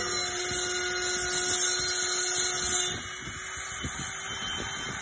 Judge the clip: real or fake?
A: real